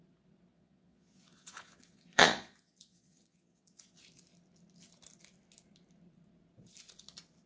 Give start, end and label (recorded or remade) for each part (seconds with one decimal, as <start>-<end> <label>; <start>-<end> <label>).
0.0-0.5 recorded; 0.5-4.0 remade; 4.0-7.5 recorded